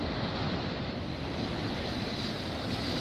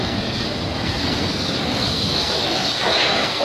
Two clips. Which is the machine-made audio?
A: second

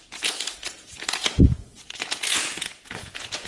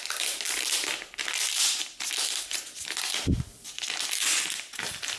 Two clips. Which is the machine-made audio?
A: first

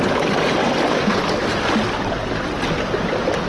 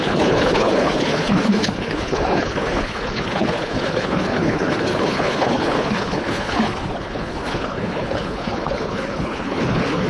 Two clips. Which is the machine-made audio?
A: second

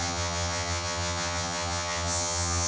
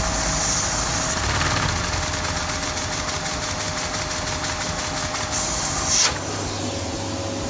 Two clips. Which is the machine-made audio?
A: first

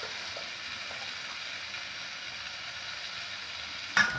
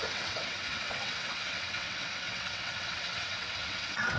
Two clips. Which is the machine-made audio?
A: second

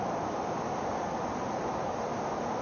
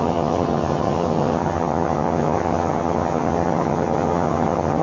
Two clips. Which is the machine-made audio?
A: second